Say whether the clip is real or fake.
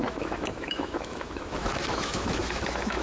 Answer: fake